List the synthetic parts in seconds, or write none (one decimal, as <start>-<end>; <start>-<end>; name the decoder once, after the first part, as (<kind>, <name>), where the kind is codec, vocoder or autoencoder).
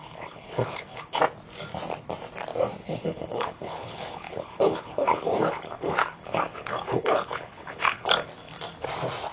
0.0-1.2 (codec, HILCodec); 2.8-8.1